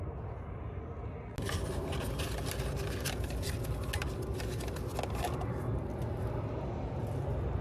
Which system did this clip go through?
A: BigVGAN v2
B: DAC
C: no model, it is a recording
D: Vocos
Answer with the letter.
C